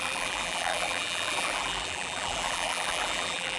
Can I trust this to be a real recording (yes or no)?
no